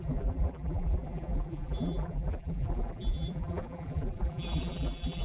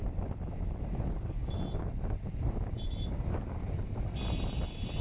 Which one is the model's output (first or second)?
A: first